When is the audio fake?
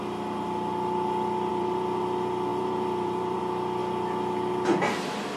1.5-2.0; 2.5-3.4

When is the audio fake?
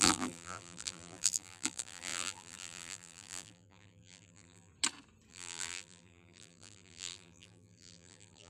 0.0-4.7; 5.3-8.5